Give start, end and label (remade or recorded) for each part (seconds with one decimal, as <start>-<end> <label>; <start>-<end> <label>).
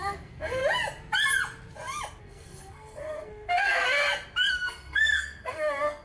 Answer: 0.0-0.6 remade; 0.6-2.2 recorded; 2.2-4.0 remade; 4.0-4.5 recorded; 4.5-6.0 remade